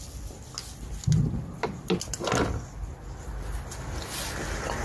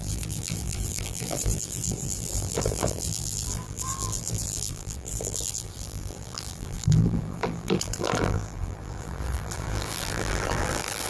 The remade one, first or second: second